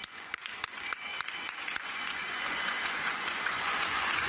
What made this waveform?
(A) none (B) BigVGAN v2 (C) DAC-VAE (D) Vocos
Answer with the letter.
D